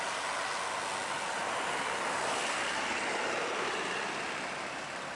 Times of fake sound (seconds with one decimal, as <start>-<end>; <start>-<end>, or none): 1.4-4.5